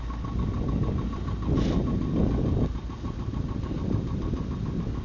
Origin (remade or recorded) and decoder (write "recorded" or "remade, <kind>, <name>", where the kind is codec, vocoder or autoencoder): recorded